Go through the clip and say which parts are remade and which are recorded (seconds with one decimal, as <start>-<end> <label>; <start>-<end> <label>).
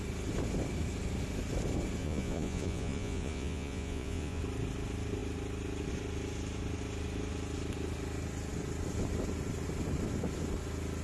0.0-2.0 recorded; 2.0-4.4 remade; 4.4-11.0 recorded